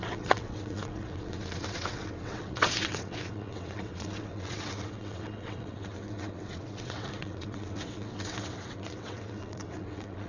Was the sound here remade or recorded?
remade